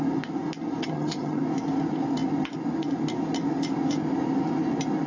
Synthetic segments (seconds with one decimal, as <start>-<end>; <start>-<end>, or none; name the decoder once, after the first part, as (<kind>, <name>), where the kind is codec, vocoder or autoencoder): 0.8-1.4 (vocoder, HiFi-GAN)